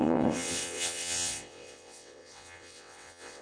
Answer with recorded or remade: remade